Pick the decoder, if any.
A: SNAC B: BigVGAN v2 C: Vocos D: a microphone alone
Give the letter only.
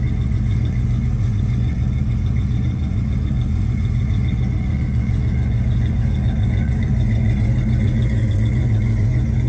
C